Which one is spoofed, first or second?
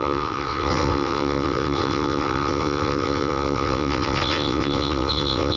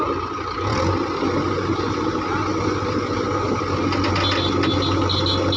first